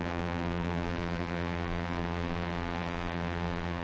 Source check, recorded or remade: remade